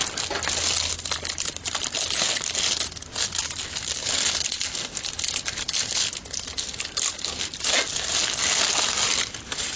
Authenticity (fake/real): real